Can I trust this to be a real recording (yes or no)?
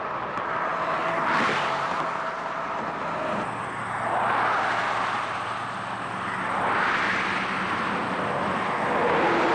yes